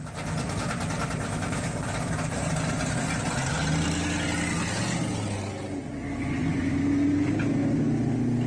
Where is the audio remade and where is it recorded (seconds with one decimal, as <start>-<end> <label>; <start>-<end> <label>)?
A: 0.0-8.5 recorded